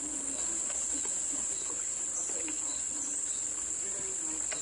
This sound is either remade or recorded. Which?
recorded